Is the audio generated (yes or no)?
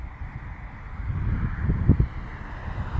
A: no